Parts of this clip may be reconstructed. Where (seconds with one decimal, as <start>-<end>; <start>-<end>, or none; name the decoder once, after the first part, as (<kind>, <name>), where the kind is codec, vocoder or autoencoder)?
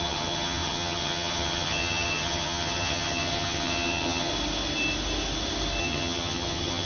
0.0-4.3 (vocoder, HiFi-GAN); 5.8-6.9